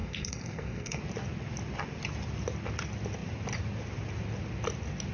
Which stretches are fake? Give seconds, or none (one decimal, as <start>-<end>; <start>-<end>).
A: 0.0-1.0